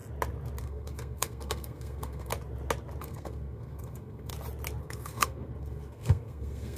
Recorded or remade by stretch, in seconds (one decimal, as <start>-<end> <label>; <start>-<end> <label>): 0.0-0.6 recorded; 0.6-2.3 remade; 2.3-3.0 recorded; 3.0-4.3 remade; 4.3-4.8 recorded; 4.8-6.8 remade